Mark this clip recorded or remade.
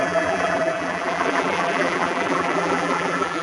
remade